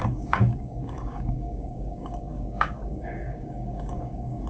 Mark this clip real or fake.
fake